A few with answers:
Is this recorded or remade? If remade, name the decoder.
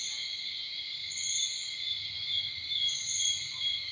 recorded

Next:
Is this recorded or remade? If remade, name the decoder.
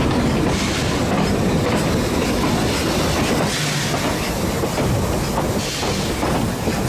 recorded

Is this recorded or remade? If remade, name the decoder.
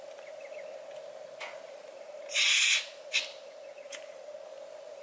recorded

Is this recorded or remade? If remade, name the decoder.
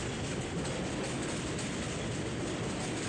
recorded